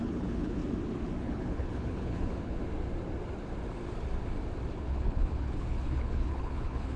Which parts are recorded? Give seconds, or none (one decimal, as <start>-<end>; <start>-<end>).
0.6-1.2; 2.6-4.8